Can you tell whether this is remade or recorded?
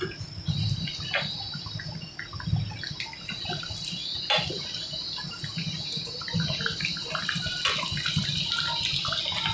recorded